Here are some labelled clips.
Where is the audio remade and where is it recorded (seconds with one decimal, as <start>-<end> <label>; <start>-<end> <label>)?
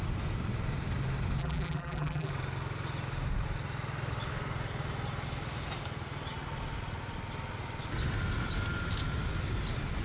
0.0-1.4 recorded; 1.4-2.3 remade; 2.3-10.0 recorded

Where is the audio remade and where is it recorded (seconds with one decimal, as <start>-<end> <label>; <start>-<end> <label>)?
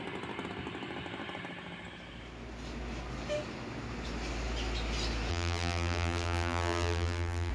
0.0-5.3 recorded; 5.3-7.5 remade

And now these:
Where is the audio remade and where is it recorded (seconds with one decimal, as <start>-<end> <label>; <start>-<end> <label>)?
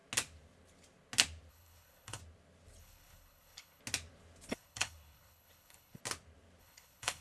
0.0-1.5 recorded; 1.5-2.2 remade; 2.2-2.8 recorded; 2.8-3.8 remade; 3.8-4.5 recorded; 4.5-6.0 remade; 6.0-6.6 recorded; 6.6-7.2 remade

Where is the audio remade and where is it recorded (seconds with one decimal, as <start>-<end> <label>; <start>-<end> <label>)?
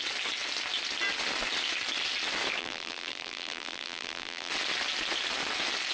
0.0-2.6 recorded; 2.6-4.5 remade; 4.5-5.9 recorded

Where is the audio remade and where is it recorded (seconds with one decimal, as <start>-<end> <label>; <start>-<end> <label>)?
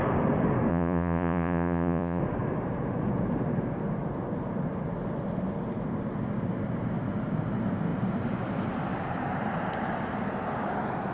0.0-0.7 recorded; 0.7-2.2 remade; 2.2-11.1 recorded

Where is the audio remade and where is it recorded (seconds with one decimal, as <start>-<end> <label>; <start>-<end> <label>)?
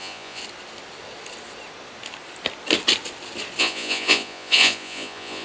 0.0-0.4 remade; 0.4-3.6 recorded; 3.6-5.4 remade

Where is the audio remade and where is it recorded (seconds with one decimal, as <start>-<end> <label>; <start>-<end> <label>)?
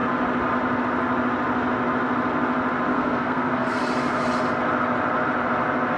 0.0-2.9 recorded; 2.9-3.8 remade; 3.8-6.0 recorded